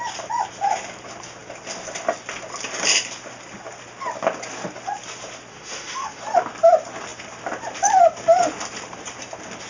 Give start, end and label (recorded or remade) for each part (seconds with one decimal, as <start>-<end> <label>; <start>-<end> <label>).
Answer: 0.0-5.5 recorded; 5.5-6.2 remade; 6.2-9.7 recorded